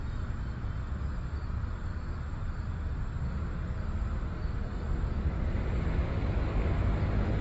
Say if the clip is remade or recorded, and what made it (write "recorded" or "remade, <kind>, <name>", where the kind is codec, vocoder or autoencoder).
recorded